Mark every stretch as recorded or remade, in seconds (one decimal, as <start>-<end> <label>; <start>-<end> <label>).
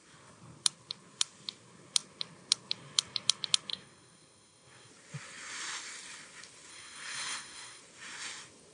0.0-3.7 recorded; 3.7-4.9 remade; 4.9-6.7 recorded; 6.7-7.8 remade; 7.8-8.7 recorded